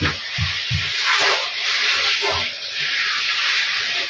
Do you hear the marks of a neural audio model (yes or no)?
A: no